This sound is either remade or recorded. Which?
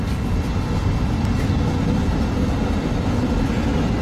recorded